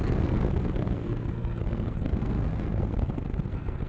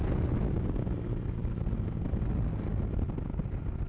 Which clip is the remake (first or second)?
first